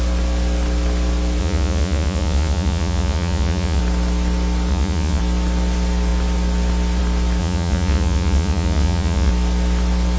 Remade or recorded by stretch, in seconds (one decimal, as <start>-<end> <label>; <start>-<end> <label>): 0.0-1.4 recorded; 1.4-3.8 remade; 3.8-4.7 recorded; 4.7-5.2 remade; 5.2-7.4 recorded; 7.4-9.3 remade; 9.3-10.2 recorded